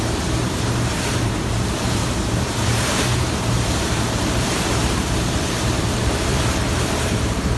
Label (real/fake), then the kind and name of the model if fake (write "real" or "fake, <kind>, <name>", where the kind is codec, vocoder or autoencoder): fake, vocoder, BigVGAN v2